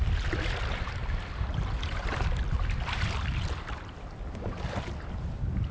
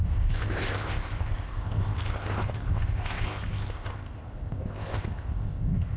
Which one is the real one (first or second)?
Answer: first